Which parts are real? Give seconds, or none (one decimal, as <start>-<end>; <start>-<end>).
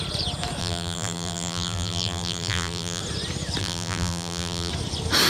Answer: 0.0-0.6; 3.0-3.6; 4.7-5.3